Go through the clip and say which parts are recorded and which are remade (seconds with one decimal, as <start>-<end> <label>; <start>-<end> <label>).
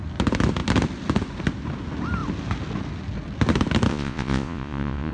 0.0-3.9 recorded; 3.9-5.1 remade